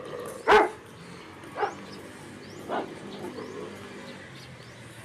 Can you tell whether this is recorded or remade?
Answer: recorded